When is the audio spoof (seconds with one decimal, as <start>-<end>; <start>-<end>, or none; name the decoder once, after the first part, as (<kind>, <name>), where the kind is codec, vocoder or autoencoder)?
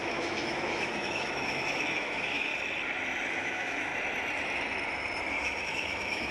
0.0-2.5 (autoencoder, DAC-VAE); 3.3-3.9; 5.3-6.3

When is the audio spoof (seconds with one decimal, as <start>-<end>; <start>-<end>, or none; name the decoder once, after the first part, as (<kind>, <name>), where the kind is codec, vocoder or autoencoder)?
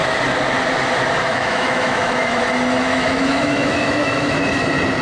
1.3-2.4 (autoencoder, DAC-VAE); 2.9-4.4